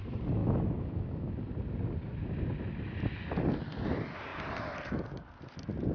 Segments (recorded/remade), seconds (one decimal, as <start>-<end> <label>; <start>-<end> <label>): 0.0-0.4 recorded; 0.4-1.4 remade; 1.4-5.9 recorded